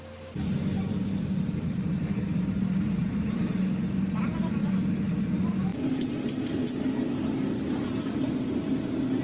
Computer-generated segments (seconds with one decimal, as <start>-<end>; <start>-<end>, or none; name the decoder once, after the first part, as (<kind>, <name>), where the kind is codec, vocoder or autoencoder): 3.0-3.7 (vocoder, BigVGAN v2)